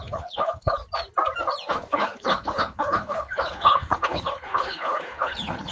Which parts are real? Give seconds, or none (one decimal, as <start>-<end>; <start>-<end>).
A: 0.8-1.7